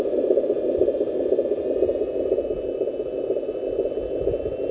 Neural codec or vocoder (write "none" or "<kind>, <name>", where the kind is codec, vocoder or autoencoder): none